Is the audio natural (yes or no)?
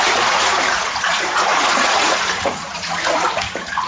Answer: no